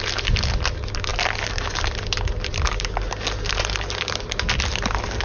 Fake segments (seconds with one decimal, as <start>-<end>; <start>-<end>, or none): none

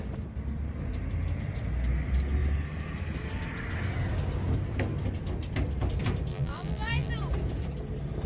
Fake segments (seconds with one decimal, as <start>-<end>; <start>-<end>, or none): 6.3-7.1

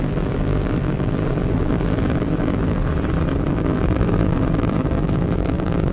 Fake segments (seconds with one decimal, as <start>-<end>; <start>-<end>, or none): 0.0-2.8; 3.5-5.9

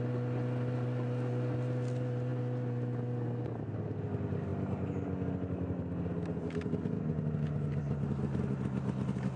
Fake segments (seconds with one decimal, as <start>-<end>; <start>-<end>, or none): none

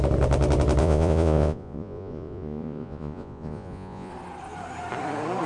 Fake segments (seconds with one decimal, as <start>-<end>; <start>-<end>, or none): 0.8-4.1

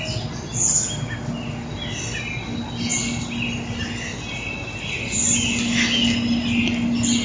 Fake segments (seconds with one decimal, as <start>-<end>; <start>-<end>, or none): none

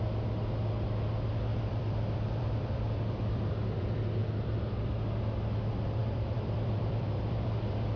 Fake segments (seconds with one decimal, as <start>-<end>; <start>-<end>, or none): 1.5-3.5; 4.2-4.9; 6.0-8.0

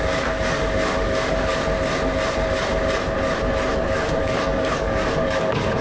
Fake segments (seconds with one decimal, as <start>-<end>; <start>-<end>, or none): 0.0-1.5; 3.7-5.8